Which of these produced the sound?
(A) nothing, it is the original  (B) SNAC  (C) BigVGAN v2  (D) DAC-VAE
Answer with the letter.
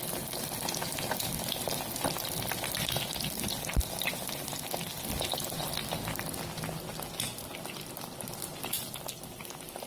A